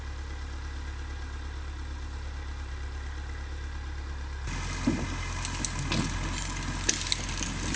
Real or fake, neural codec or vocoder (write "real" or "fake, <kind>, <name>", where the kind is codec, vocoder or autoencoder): real